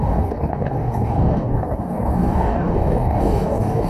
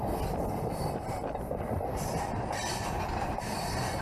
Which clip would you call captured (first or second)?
second